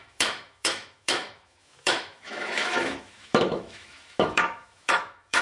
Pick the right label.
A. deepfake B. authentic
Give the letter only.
A